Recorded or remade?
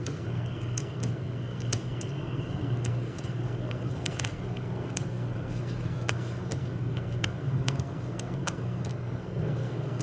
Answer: remade